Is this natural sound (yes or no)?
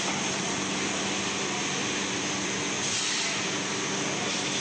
yes